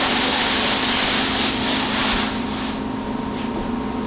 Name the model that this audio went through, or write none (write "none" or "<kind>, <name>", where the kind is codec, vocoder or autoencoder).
none